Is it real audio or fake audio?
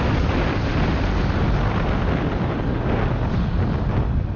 real